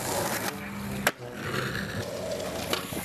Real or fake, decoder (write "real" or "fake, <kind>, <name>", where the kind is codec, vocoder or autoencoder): real